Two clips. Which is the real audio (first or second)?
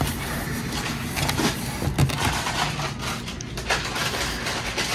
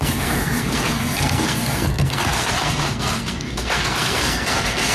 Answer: first